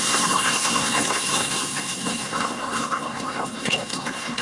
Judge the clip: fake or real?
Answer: fake